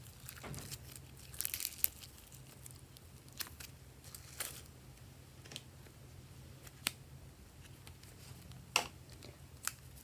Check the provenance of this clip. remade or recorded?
recorded